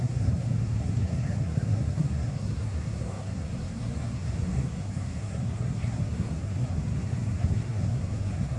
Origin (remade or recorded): remade